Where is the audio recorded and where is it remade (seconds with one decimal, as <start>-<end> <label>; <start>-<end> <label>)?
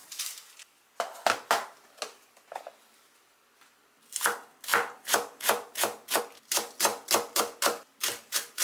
0.0-4.7 recorded; 4.7-6.2 remade; 6.2-8.6 recorded